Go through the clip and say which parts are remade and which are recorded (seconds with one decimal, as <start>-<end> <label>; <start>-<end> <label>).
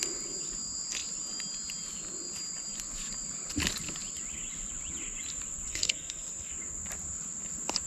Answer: 0.0-5.7 recorded; 5.7-6.5 remade; 6.5-7.9 recorded